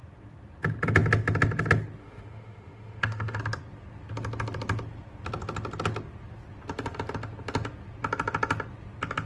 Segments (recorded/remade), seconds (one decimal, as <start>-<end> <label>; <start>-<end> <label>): 0.0-2.0 recorded; 2.0-3.4 remade; 3.4-9.3 recorded